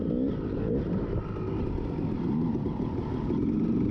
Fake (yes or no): no